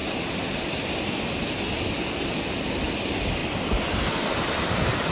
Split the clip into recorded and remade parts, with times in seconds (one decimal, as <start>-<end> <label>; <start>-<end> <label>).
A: 0.0-5.1 recorded